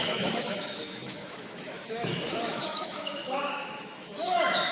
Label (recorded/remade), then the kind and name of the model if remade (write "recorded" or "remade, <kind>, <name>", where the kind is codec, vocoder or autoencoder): remade, autoencoder, DAC-VAE